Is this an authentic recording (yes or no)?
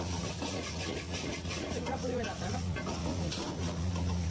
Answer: no